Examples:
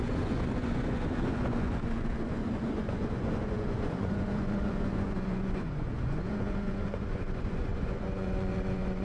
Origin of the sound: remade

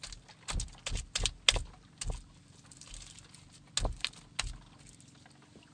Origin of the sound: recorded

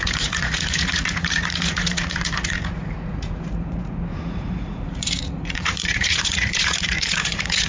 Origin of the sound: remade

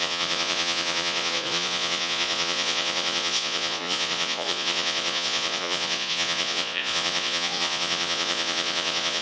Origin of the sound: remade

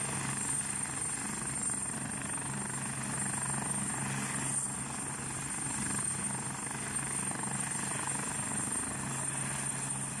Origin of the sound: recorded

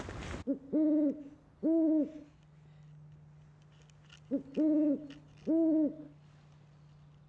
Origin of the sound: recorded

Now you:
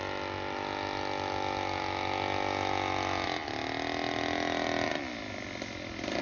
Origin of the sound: recorded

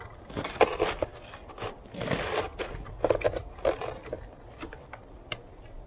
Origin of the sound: recorded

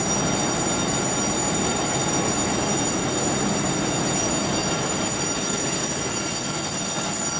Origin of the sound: recorded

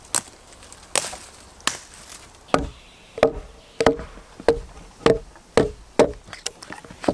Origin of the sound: recorded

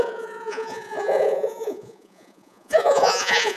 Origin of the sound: remade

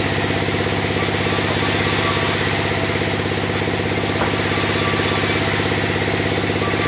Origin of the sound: recorded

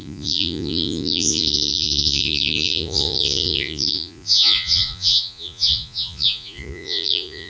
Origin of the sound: remade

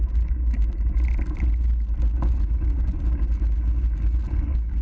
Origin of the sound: recorded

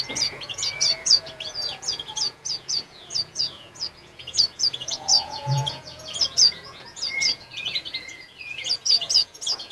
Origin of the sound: remade